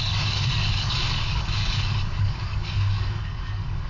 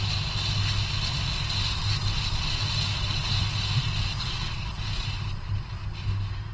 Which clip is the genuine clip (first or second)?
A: second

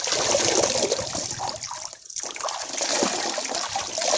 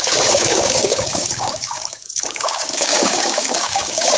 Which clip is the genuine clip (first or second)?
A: first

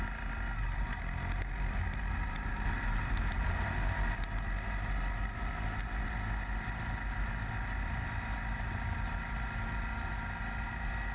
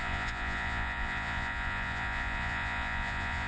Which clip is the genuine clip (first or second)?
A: first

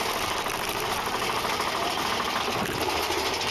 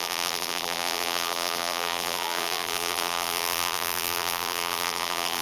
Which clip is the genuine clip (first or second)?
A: first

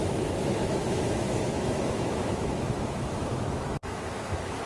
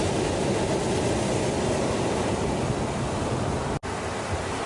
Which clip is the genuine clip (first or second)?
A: second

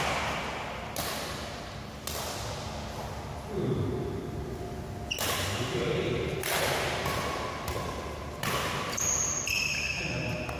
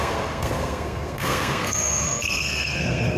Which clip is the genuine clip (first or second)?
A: first